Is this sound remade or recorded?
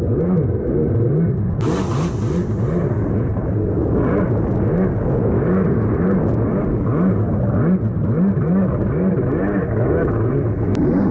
recorded